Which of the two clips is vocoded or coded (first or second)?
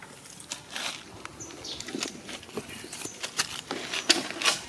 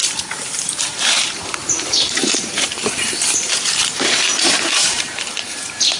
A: second